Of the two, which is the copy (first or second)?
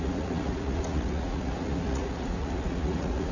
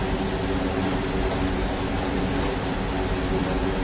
first